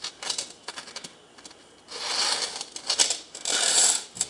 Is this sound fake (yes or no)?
no